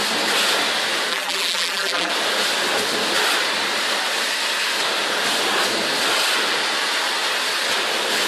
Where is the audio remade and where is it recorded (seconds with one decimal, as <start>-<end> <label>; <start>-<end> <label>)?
0.0-1.1 recorded; 1.1-2.1 remade; 2.1-8.3 recorded